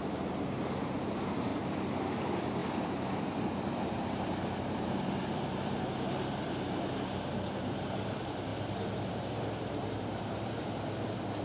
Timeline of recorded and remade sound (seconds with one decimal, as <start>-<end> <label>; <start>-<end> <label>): 0.0-1.5 remade; 1.5-2.1 recorded; 2.1-8.5 remade; 8.5-9.1 recorded; 9.1-11.4 remade